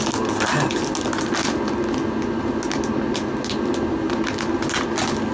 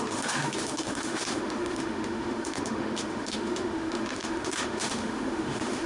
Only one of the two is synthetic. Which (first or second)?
second